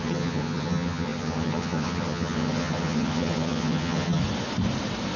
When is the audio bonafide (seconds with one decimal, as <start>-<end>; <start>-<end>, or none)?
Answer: 4.2-5.2